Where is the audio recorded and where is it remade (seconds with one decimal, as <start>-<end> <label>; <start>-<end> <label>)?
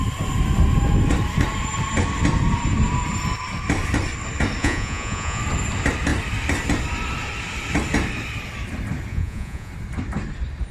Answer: 0.0-4.6 recorded; 4.6-5.4 remade; 5.4-9.1 recorded; 9.1-9.7 remade; 9.7-10.7 recorded